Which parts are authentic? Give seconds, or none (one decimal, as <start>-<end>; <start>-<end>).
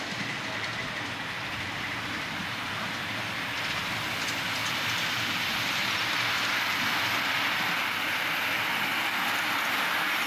0.0-10.3